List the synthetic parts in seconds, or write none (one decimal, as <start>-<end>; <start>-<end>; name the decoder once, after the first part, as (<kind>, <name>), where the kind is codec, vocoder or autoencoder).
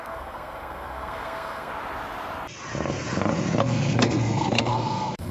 0.0-1.7 (codec, SNAC); 3.6-5.3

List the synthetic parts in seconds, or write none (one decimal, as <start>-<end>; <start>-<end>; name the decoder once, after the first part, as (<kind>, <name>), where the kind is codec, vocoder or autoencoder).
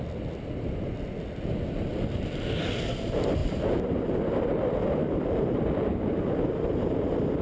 3.4-4.0 (vocoder, BigVGAN v2); 5.0-5.6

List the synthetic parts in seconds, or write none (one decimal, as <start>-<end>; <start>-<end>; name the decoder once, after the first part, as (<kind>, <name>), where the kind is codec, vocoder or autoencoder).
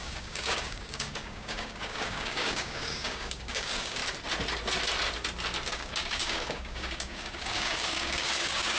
0.0-4.0 (codec, DAC); 5.7-8.8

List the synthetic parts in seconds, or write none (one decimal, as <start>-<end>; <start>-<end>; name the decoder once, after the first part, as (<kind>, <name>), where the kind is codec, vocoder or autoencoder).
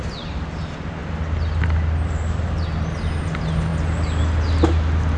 none